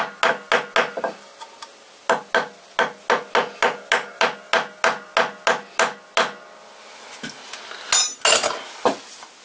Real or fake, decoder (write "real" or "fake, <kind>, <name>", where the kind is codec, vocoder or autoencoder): real